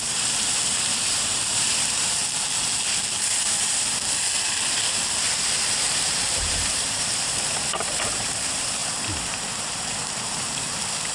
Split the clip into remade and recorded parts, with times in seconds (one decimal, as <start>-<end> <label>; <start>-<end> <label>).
0.0-2.2 remade; 2.2-5.6 recorded; 5.6-11.1 remade